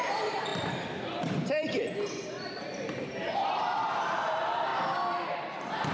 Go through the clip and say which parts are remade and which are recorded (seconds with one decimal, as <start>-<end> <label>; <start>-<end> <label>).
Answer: 0.0-0.5 remade; 0.5-1.2 recorded; 1.2-1.8 remade; 1.8-2.7 recorded; 2.7-4.7 remade; 4.7-5.4 recorded; 5.4-5.9 remade